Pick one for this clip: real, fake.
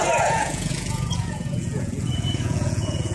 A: fake